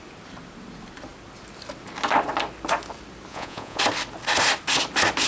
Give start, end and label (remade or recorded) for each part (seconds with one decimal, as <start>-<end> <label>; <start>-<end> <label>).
0.0-3.3 recorded; 3.3-3.8 remade; 3.8-5.3 recorded